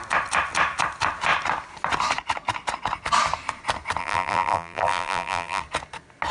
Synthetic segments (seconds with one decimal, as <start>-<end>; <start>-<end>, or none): 4.0-5.6